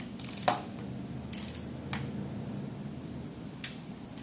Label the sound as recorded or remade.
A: recorded